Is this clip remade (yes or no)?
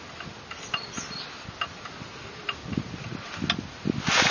no